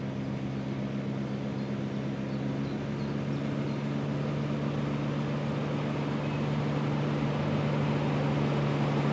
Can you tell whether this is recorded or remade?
recorded